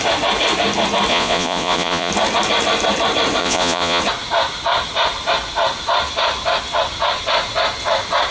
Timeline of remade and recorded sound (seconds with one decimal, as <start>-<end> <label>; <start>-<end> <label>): 0.0-1.1 recorded; 1.1-2.1 remade; 2.1-3.4 recorded; 3.4-4.0 remade; 4.0-8.3 recorded